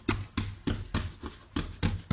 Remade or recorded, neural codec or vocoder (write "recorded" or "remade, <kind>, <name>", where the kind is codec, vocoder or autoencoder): recorded